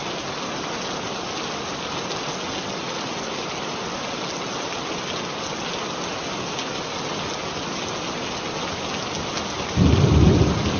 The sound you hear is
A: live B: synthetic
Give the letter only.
A